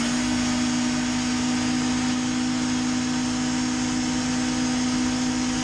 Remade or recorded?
recorded